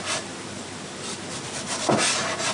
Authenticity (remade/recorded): recorded